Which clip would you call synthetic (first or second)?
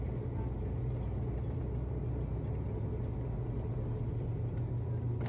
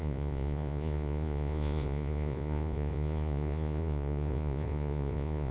second